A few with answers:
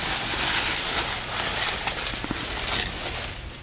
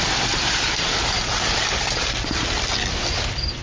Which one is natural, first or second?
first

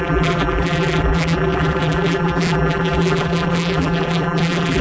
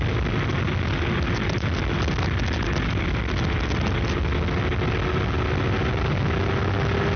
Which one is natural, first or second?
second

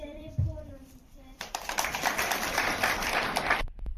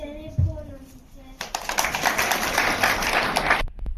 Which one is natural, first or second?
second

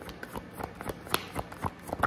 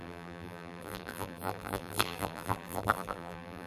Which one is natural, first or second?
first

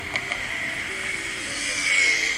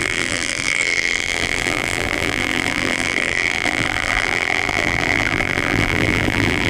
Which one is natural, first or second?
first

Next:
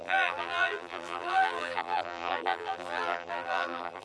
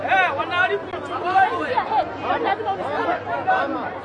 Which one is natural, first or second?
second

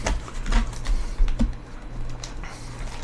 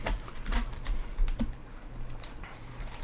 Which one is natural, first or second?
first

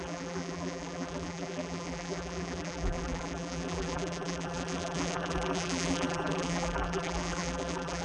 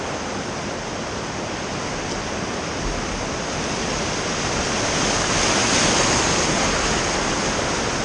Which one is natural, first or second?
second